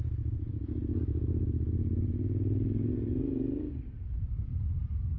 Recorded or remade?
recorded